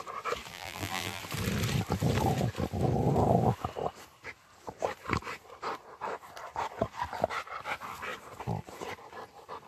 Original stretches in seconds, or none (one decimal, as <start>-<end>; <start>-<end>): 0.0-0.5; 1.2-9.7